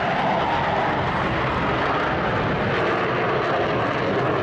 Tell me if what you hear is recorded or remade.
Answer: recorded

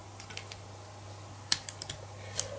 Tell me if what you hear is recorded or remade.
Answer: recorded